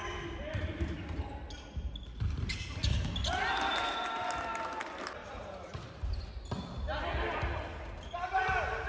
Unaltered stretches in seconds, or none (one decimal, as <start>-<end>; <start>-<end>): 1.2-8.9